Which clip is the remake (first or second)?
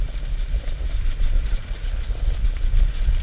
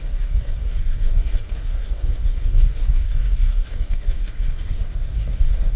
second